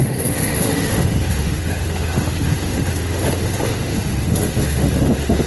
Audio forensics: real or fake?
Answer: fake